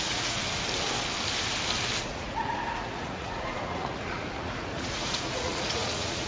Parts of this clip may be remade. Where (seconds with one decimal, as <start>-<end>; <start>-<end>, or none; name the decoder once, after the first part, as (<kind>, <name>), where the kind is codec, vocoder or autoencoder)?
0.0-0.4 (vocoder, Vocos); 2.0-6.3